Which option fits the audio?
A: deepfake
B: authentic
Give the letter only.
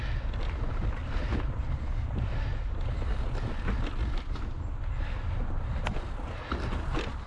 B